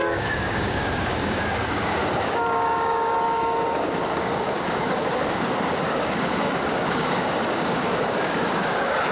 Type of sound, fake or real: fake